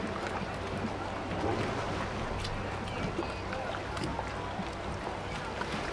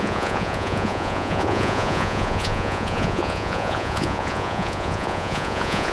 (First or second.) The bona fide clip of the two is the first